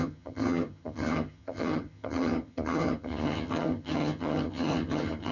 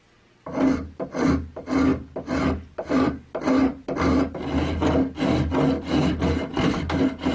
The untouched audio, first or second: second